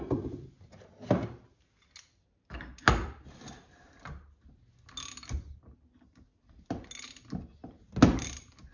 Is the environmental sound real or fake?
real